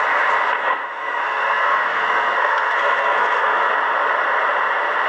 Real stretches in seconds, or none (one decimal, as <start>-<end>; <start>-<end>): 0.0-0.6; 3.7-5.1